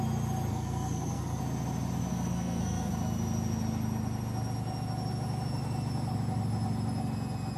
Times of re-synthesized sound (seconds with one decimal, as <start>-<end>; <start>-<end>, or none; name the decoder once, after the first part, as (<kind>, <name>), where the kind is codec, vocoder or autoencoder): 0.5-1.4 (codec, SNAC); 2.1-2.9